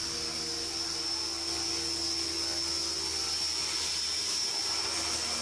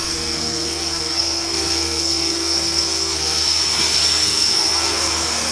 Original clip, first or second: first